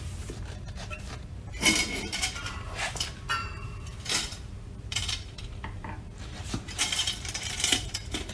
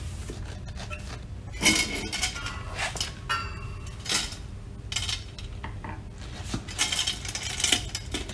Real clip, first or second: second